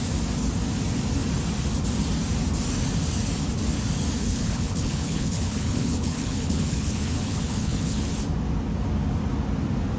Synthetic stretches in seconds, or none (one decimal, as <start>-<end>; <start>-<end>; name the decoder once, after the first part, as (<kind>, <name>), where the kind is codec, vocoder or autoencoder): 4.2-8.1 (codec, HILCodec)